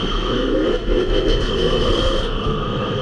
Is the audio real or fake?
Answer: fake